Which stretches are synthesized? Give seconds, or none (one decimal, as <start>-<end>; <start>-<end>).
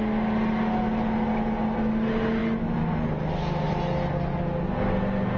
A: none